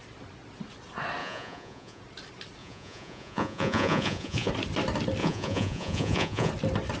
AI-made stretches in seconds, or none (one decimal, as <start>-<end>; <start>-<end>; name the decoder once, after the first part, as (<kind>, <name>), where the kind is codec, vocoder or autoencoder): 1.2-2.0 (vocoder, Vocos); 2.6-4.5; 5.2-6.5